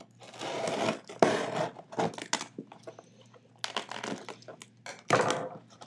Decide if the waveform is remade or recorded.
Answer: recorded